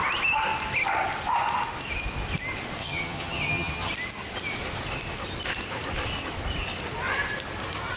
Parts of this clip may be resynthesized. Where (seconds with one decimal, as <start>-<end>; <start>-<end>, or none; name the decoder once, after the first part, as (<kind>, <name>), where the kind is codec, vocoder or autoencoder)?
2.8-3.9 (vocoder, HiFi-GAN)